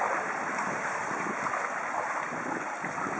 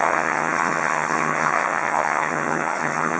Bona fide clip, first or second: first